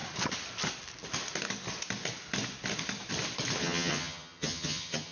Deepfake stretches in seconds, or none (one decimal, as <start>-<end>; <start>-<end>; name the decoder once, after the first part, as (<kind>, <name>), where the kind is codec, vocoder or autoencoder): 3.6-5.1 (vocoder, HiFi-GAN)